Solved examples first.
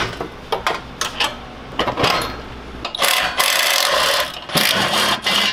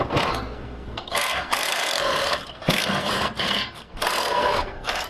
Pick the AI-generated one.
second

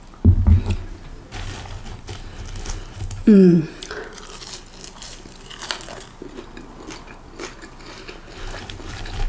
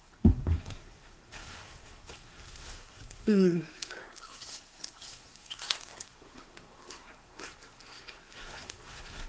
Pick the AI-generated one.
second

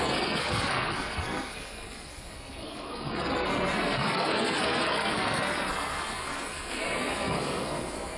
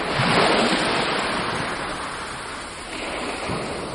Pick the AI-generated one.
first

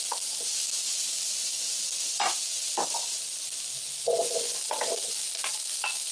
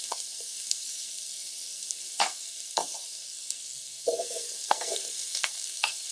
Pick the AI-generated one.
second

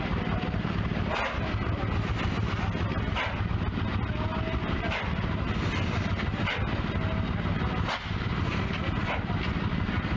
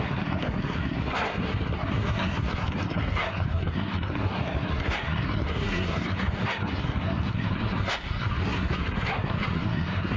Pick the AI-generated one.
second